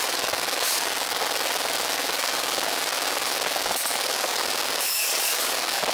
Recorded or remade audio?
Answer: remade